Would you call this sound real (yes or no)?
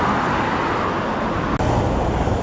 yes